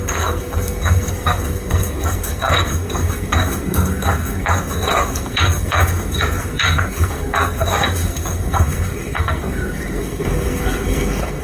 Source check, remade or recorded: remade